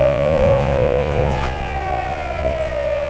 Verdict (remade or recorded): remade